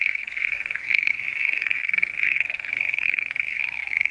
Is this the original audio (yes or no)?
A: no